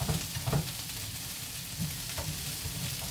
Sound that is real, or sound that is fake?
fake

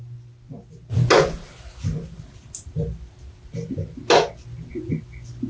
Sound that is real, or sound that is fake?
real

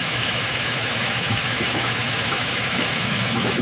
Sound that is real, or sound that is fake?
fake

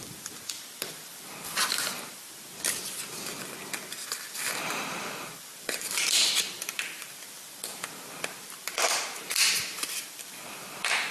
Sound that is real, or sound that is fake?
fake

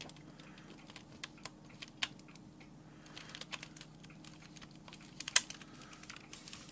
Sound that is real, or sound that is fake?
real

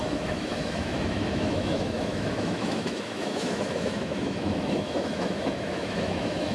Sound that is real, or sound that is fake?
fake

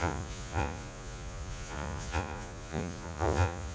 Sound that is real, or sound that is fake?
fake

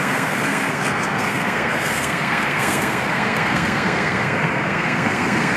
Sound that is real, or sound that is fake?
fake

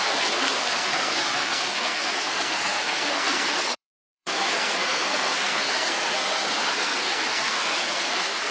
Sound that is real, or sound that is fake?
fake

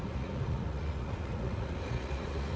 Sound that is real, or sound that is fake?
fake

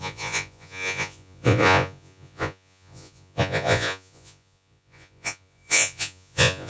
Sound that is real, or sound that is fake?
fake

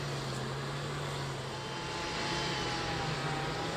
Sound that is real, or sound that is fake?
real